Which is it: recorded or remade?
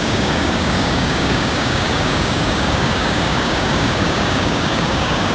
remade